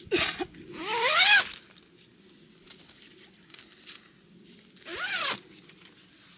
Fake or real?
real